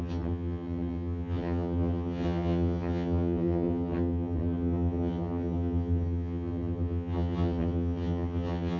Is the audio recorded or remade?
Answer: remade